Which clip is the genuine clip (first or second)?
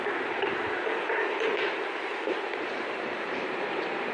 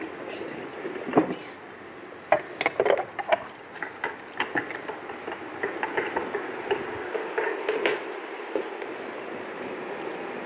second